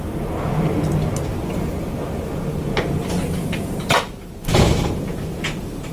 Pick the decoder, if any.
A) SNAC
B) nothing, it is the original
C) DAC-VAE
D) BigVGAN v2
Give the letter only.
B